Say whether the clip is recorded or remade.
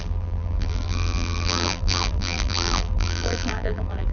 remade